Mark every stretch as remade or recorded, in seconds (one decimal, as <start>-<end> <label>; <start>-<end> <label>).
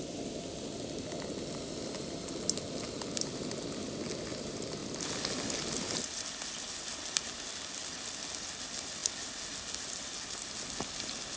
0.0-11.4 recorded